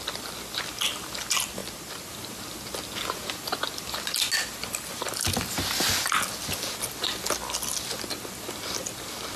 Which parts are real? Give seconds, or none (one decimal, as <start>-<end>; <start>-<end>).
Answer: 0.0-9.4